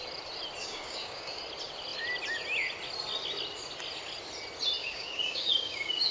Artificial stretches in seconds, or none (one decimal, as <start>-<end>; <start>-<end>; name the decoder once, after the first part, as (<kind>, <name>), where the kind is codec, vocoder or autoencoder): 0.6-1.4 (codec, DAC); 4.8-6.1